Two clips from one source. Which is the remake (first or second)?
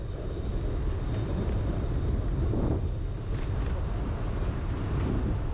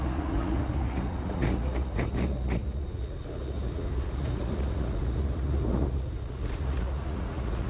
second